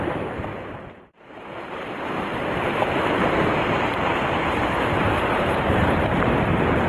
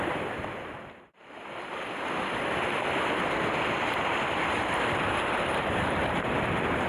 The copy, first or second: first